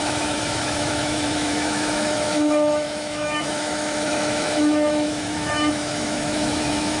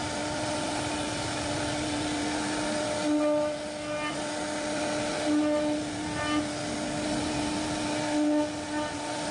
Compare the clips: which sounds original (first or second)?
second